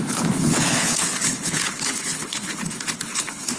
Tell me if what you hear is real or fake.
fake